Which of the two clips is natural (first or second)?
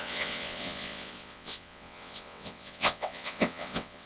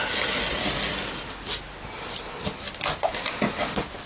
second